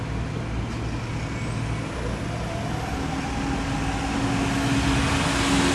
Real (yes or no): yes